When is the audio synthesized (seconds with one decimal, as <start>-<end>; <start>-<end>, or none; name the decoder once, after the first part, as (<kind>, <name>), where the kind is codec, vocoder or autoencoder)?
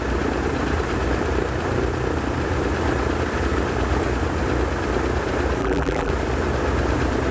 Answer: 5.6-6.1 (vocoder, BigVGAN v2)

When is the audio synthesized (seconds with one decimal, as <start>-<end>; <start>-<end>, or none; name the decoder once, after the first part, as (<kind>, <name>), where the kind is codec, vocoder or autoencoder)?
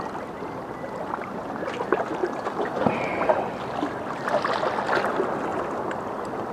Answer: 2.2-4.0 (vocoder, BigVGAN v2); 5.5-6.5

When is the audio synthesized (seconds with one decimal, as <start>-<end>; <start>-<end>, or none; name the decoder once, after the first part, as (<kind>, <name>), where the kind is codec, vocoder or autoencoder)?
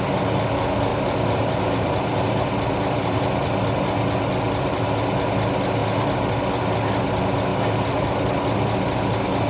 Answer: 0.9-3.2 (vocoder, BigVGAN v2); 7.5-8.3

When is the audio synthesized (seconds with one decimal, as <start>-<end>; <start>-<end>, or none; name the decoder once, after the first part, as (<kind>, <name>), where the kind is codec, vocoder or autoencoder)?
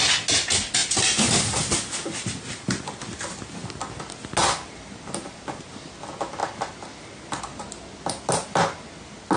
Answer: 4.4-5.7 (vocoder, BigVGAN v2)